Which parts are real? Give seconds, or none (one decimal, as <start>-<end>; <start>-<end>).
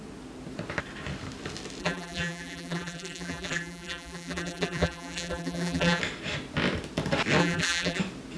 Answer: 0.0-1.8; 6.0-7.4; 8.0-8.4